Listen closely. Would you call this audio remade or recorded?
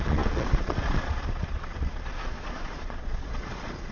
remade